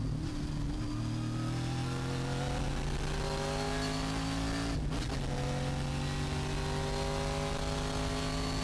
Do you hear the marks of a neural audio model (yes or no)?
no